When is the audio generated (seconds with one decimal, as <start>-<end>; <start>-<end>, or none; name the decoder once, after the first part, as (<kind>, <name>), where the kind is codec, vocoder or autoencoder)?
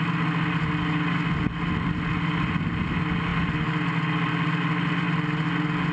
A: none